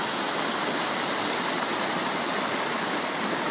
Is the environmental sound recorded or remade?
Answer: recorded